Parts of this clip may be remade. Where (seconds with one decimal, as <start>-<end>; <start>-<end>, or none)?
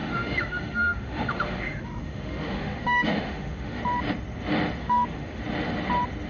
0.0-3.8; 4.8-5.4